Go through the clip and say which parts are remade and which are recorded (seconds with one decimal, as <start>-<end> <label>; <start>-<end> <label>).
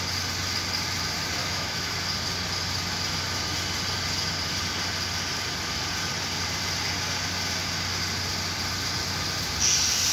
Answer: 0.0-1.4 recorded; 1.4-1.9 remade; 1.9-10.1 recorded